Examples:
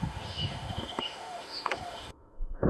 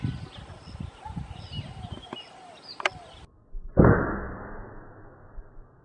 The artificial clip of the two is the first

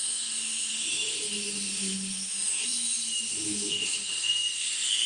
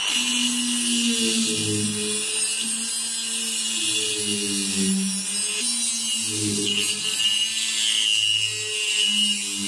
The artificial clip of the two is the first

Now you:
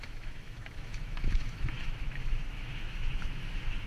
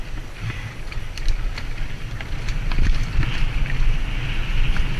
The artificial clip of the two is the first